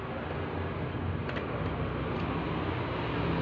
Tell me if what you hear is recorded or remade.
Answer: recorded